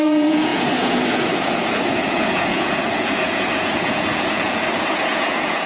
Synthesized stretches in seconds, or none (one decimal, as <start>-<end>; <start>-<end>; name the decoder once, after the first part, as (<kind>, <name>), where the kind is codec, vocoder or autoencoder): 0.0-5.7 (vocoder, Vocos)